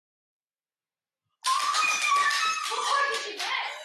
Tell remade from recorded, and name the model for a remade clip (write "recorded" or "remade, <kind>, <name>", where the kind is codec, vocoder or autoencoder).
recorded